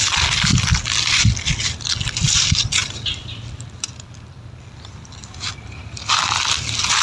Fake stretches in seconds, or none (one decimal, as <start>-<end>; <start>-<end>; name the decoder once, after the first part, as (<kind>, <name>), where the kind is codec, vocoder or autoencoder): none